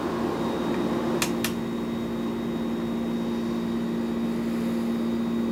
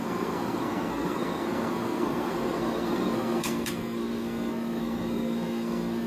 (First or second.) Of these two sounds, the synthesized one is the second